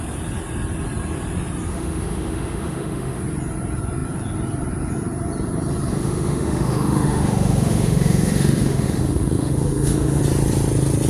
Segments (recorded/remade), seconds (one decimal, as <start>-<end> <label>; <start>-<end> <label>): 0.0-1.7 recorded; 1.7-3.2 remade; 3.2-5.9 recorded; 5.9-10.2 remade; 10.2-11.1 recorded